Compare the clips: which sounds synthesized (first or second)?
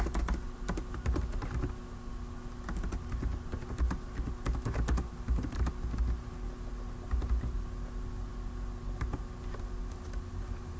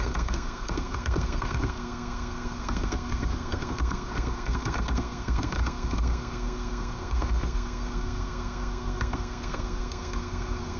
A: second